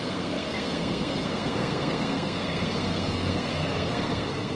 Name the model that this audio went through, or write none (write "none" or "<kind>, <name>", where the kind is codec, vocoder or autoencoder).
codec, SNAC